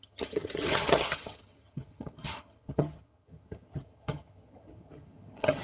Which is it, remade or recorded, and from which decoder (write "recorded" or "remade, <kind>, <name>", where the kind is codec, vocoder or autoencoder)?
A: remade, vocoder, HiFi-GAN